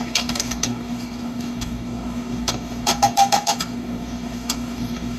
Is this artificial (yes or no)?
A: yes